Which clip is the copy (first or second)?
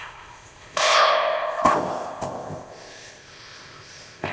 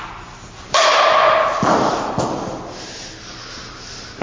first